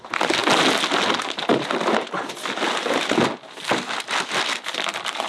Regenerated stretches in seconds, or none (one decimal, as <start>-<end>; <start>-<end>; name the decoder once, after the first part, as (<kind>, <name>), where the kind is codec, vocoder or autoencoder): none